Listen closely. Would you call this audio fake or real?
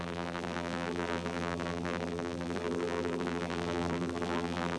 fake